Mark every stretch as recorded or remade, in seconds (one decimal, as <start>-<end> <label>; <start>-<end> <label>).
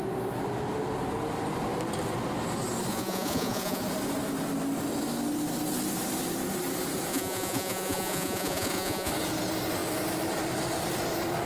0.0-2.9 recorded; 2.9-3.8 remade; 3.8-7.1 recorded; 7.1-9.1 remade; 9.1-11.5 recorded